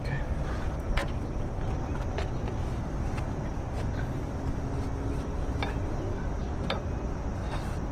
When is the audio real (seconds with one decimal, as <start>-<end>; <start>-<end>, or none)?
0.0-6.4; 7.3-7.9

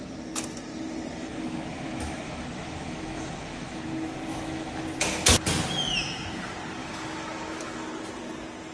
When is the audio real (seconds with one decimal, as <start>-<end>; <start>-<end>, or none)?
0.0-1.2; 3.8-4.3; 4.8-6.8; 7.9-8.7

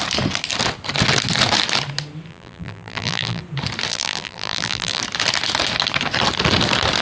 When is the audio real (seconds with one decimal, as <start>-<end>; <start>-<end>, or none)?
0.0-2.3; 3.4-3.9; 5.0-7.0